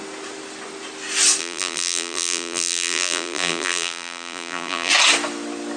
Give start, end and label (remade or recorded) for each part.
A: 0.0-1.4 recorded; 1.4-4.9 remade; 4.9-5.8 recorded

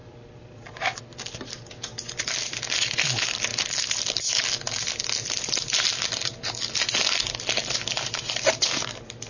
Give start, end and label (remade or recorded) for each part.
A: 0.0-1.0 remade; 1.0-9.3 recorded

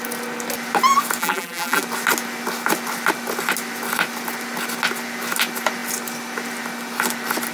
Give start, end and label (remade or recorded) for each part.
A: 0.0-1.2 recorded; 1.2-1.8 remade; 1.8-7.5 recorded

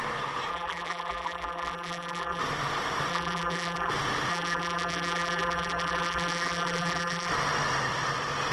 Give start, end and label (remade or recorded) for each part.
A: 0.0-0.5 recorded; 0.5-2.4 remade; 2.4-3.1 recorded; 3.1-3.9 remade; 3.9-4.3 recorded; 4.3-7.3 remade; 7.3-8.5 recorded

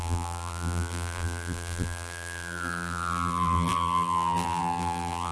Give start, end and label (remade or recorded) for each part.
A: 0.0-5.3 remade

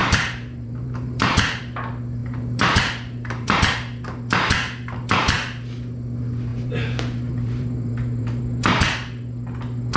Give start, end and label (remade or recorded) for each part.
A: 0.0-1.6 remade; 1.6-2.2 recorded; 2.2-3.6 remade; 3.6-6.5 recorded; 6.5-8.4 remade; 8.4-10.0 recorded

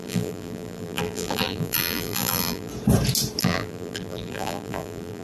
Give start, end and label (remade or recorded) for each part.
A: 0.0-2.7 remade; 2.7-3.4 recorded; 3.4-5.2 remade

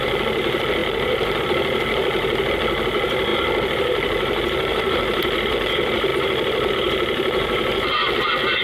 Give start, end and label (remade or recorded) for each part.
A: 0.0-0.8 recorded; 0.8-1.4 remade; 1.4-8.6 recorded